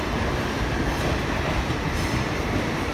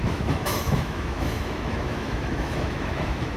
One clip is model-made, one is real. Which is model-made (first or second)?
second